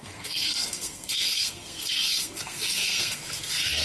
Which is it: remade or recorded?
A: remade